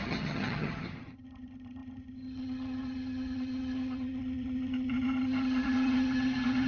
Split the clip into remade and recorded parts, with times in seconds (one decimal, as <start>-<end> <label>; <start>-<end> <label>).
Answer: 0.0-6.7 remade